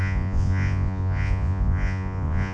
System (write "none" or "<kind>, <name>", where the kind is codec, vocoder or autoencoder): vocoder, Vocos